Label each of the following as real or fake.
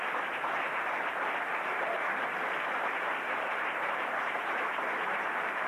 fake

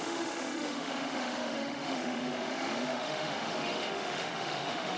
fake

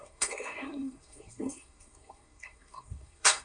fake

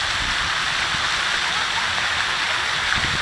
real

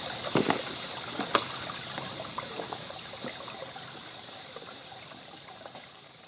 real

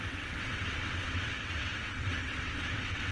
fake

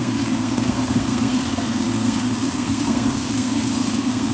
fake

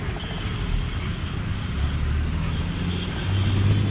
real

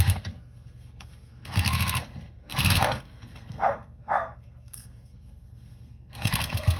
fake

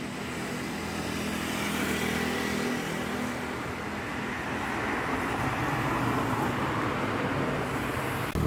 real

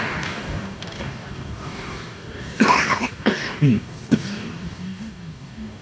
fake